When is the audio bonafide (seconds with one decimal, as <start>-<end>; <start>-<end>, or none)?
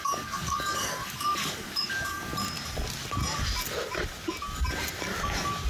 2.3-5.7